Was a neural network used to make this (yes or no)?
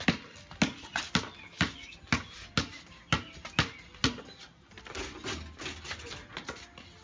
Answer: no